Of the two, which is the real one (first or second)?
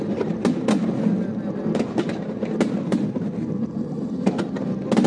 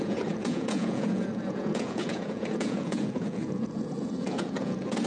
first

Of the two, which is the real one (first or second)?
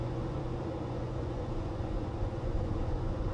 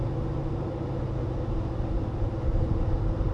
second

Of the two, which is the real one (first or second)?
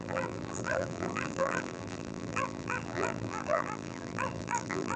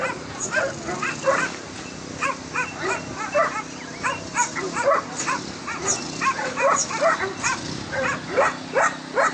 second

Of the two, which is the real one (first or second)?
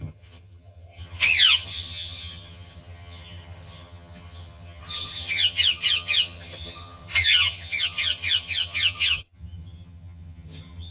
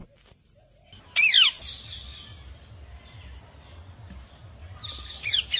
second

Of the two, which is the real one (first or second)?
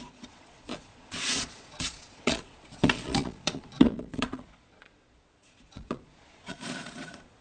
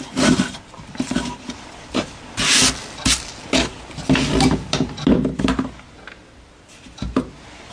second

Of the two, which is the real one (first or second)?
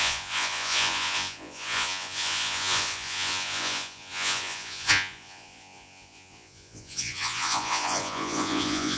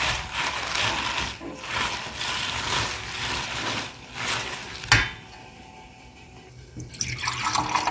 second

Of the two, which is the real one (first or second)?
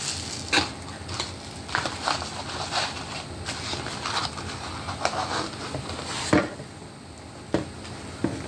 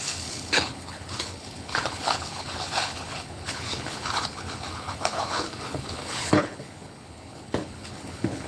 first